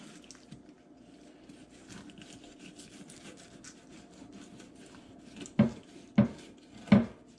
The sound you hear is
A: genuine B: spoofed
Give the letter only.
A